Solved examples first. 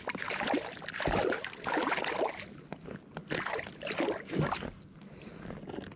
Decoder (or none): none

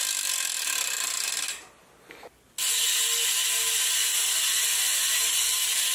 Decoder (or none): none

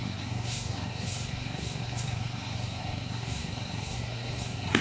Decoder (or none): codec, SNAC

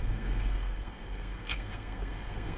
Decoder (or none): codec, SNAC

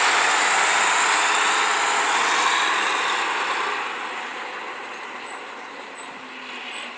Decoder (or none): none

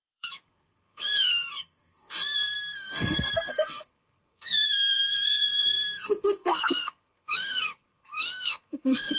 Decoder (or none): codec, SNAC